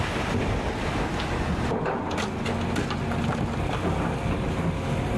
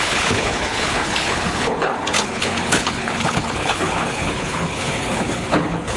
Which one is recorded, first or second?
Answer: first